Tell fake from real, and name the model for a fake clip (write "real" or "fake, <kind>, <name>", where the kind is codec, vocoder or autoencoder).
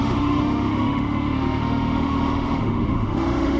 fake, autoencoder, DAC-VAE